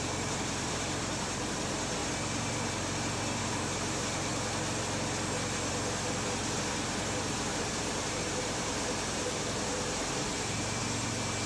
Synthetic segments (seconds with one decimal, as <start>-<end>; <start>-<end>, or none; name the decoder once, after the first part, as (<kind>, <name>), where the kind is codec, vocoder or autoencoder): 0.0-2.0 (vocoder, BigVGAN v2); 3.4-4.3; 7.2-10.8